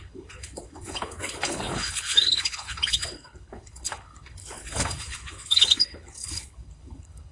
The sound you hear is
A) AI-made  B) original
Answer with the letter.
A